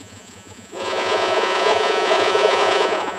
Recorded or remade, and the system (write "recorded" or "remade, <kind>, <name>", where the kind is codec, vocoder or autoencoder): remade, vocoder, Vocos